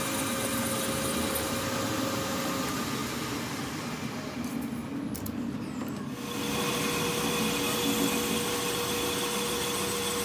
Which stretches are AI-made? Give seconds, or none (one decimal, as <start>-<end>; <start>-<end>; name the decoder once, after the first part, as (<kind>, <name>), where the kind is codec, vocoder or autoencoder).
none